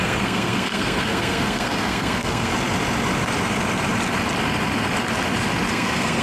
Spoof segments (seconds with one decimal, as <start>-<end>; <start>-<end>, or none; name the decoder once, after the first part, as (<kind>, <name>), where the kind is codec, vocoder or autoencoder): 0.0-2.5 (codec, SNAC); 5.7-6.2

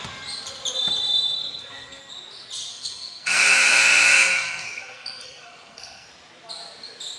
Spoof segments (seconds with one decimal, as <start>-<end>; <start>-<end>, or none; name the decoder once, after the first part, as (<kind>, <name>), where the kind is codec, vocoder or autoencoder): 1.4-2.0 (codec, SNAC); 2.7-6.1

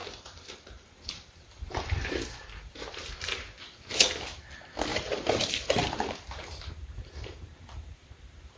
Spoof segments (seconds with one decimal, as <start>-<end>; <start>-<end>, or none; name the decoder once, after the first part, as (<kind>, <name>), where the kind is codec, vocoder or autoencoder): 0.0-3.1 (vocoder, BigVGAN v2); 4.9-8.6

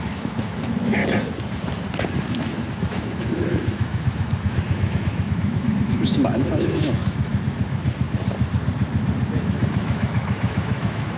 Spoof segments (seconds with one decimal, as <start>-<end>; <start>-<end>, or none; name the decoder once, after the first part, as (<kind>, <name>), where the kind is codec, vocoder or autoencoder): 0.0-1.0 (autoencoder, DAC-VAE); 2.8-7.3; 9.4-11.2

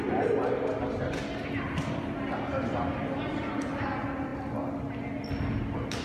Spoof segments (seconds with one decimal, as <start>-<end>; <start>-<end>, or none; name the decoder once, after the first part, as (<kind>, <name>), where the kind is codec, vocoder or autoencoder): none

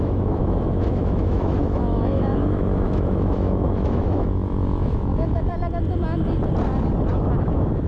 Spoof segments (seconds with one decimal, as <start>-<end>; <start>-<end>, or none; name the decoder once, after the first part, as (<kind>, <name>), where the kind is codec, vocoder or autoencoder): 0.0-5.5 (autoencoder, DAC-VAE); 7.4-7.9